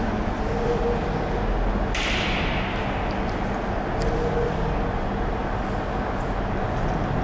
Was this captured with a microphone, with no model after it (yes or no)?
yes